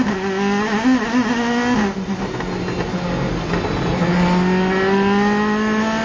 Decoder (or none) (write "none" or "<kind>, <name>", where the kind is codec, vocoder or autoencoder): none